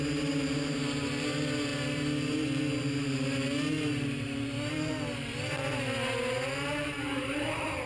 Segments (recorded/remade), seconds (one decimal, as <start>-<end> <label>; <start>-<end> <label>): 0.0-7.9 remade